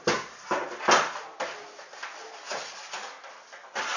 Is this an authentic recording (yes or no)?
yes